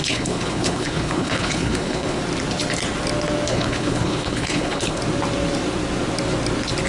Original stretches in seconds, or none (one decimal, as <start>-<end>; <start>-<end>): 2.2-3.5; 5.0-6.9